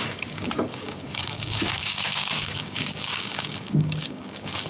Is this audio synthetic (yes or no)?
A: yes